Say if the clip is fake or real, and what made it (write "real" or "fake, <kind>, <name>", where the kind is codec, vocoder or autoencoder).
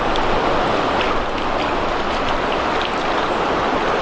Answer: real